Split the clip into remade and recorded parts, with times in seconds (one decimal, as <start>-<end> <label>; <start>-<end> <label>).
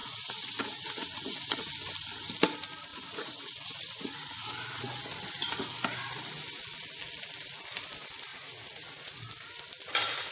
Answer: 0.0-1.7 remade; 1.7-2.9 recorded; 2.9-4.8 remade; 4.8-8.3 recorded; 8.3-9.1 remade; 9.1-10.3 recorded